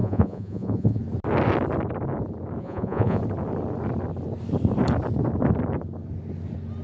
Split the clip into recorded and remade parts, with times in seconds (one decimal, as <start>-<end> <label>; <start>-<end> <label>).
0.0-1.0 remade; 1.0-2.6 recorded; 2.6-3.2 remade; 3.2-6.8 recorded